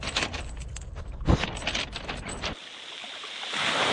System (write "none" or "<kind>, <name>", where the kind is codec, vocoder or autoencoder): none